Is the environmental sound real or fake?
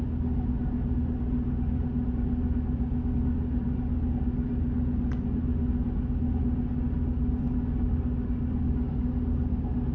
real